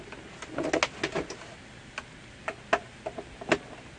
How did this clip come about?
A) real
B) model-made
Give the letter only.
A